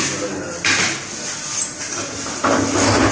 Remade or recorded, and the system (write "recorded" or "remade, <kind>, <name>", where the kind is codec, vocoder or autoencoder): recorded